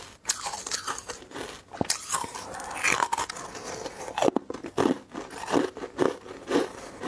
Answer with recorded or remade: recorded